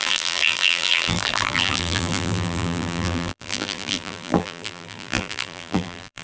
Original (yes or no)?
no